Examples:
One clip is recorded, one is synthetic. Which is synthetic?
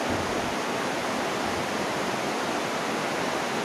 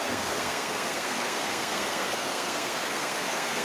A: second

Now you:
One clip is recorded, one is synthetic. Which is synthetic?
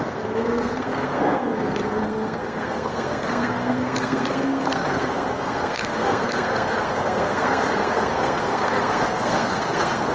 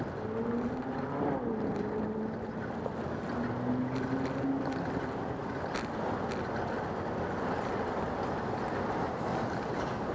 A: first